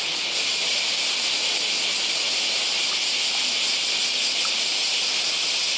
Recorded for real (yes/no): yes